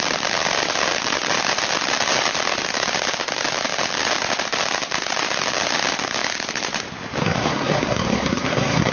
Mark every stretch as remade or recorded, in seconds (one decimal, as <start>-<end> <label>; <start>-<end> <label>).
0.0-7.2 recorded; 7.2-8.9 remade